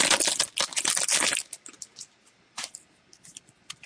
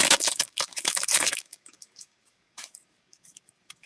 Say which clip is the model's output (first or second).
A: second